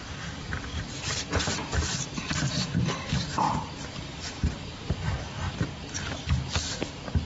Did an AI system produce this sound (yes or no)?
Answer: yes